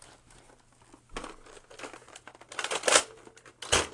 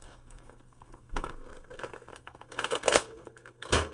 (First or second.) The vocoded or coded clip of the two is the second